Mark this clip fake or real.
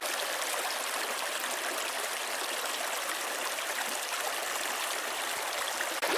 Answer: real